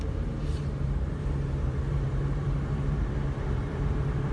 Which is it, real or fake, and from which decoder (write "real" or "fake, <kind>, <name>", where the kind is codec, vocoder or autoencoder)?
fake, vocoder, BigVGAN v2